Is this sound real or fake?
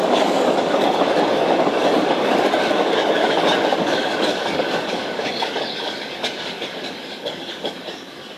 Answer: fake